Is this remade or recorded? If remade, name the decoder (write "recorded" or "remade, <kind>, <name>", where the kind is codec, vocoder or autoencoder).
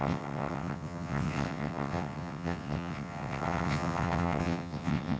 remade, vocoder, WaveNeXt